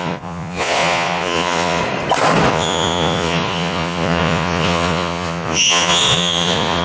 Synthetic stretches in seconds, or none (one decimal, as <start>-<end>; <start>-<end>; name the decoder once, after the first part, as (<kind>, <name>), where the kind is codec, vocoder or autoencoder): 0.0-1.8 (vocoder, Vocos); 2.5-6.8